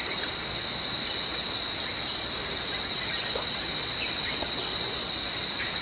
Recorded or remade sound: recorded